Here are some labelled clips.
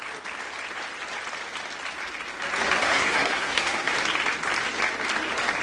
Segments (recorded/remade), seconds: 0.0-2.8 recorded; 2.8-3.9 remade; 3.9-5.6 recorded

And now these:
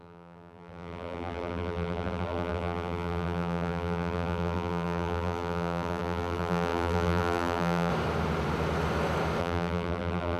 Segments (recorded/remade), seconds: 0.0-7.9 remade; 7.9-9.4 recorded; 9.4-10.4 remade

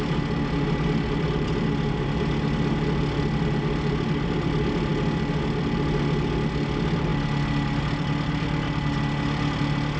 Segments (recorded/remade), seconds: 0.0-10.0 recorded

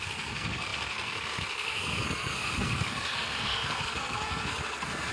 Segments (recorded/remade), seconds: 0.0-5.1 remade

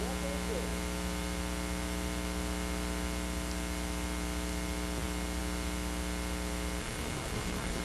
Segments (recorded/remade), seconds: 0.0-6.8 recorded; 6.8-7.8 remade